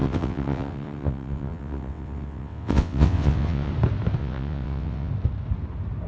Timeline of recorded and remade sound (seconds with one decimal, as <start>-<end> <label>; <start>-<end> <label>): 0.0-3.7 remade; 3.7-4.2 recorded; 4.2-5.1 remade; 5.1-6.1 recorded